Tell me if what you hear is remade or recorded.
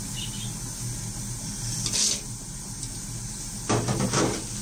recorded